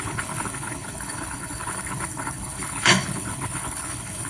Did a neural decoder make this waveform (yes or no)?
yes